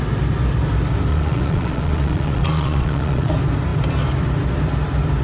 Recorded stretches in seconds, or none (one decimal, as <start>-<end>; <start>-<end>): 0.0-1.1; 3.3-5.2